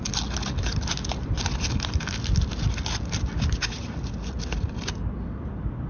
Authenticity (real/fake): real